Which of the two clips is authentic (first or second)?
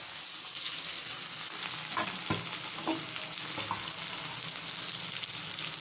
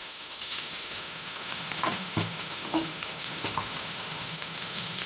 first